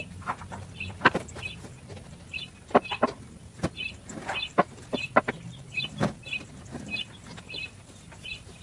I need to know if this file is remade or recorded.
remade